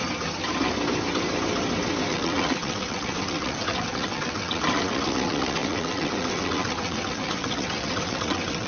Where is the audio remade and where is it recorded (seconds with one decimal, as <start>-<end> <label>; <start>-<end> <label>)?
0.0-2.1 recorded; 2.1-8.7 remade